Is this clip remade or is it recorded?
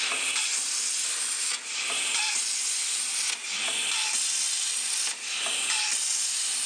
recorded